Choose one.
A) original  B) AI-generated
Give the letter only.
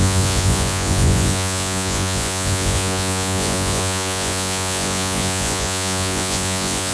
B